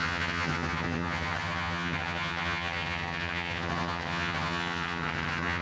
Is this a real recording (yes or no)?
no